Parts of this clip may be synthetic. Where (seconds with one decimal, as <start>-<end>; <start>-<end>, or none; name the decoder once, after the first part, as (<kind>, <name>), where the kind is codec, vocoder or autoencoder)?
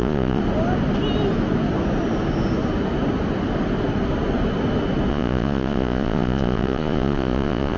0.0-0.4 (vocoder, Vocos); 5.1-7.8